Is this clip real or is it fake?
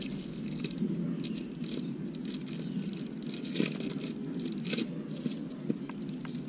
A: real